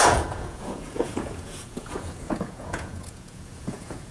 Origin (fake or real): fake